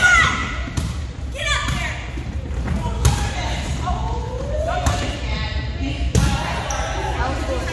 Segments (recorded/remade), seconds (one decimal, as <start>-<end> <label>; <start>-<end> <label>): 0.0-7.7 recorded